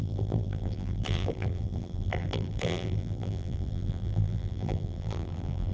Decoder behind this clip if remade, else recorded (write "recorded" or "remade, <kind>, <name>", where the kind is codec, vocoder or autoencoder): remade, vocoder, BigVGAN v2